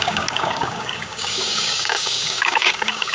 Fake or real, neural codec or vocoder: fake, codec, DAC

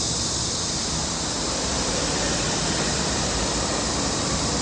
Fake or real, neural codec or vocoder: real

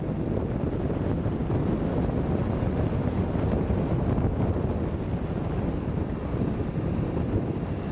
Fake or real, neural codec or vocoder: real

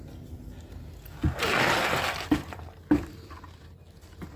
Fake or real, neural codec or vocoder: real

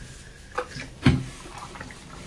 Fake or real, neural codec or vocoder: real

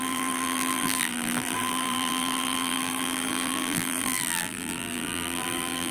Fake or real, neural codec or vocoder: fake, vocoder, BigVGAN v2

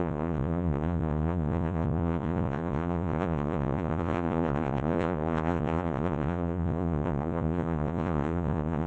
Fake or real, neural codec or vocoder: fake, vocoder, Vocos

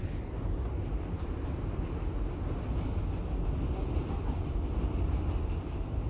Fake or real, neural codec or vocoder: real